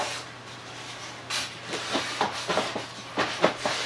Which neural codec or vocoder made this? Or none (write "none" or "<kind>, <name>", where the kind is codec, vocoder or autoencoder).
none